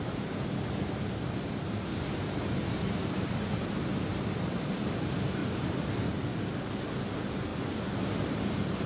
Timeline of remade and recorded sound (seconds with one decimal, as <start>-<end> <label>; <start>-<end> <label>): 0.0-1.9 recorded; 1.9-4.9 remade; 4.9-5.4 recorded; 5.4-6.1 remade; 6.1-8.9 recorded